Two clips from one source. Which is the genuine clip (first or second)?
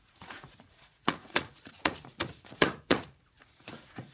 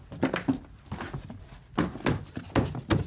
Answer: second